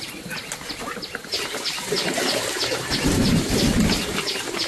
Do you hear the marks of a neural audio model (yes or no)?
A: no